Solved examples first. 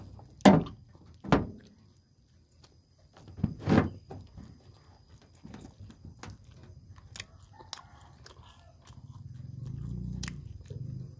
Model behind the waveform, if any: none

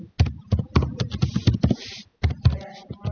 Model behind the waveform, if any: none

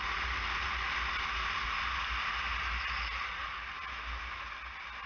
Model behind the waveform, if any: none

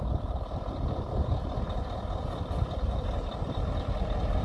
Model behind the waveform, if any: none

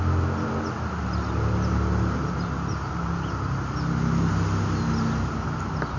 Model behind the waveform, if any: none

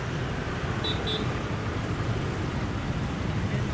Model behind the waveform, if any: none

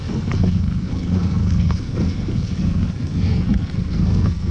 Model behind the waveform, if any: codec, SNAC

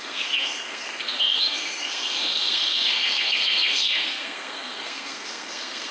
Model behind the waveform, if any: codec, SNAC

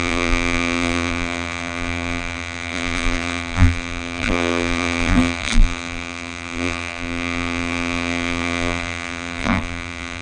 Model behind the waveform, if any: vocoder, BigVGAN v2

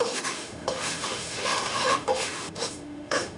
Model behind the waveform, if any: autoencoder, DAC-VAE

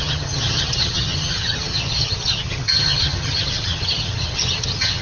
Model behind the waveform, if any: vocoder, HiFi-GAN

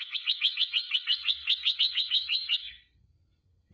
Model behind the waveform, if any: codec, SNAC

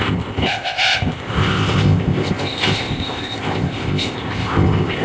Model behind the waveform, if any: codec, ZipCodec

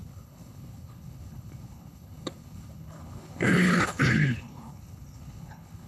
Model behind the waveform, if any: codec, HILCodec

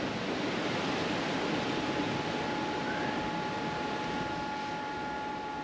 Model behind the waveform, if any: none